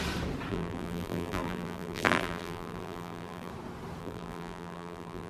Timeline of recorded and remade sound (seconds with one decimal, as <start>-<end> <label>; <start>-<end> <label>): 0.0-0.5 recorded; 0.5-3.5 remade; 3.5-4.0 recorded; 4.0-5.3 remade